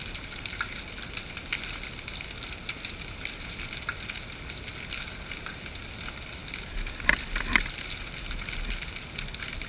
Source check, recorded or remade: recorded